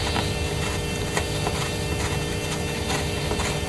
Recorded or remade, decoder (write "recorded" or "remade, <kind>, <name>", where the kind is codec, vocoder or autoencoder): recorded